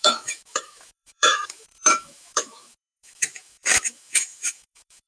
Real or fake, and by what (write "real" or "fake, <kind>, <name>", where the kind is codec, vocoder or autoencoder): fake, autoencoder, DAC-VAE